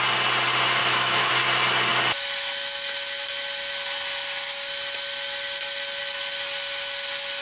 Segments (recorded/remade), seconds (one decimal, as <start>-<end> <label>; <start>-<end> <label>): 0.0-0.8 recorded; 0.8-1.3 remade; 1.3-7.4 recorded